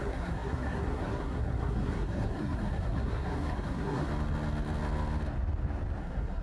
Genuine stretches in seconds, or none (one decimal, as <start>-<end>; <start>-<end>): 4.1-6.0